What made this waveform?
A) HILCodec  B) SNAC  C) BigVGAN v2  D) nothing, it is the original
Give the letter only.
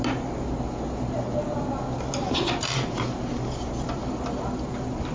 D